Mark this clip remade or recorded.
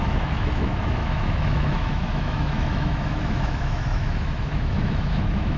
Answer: remade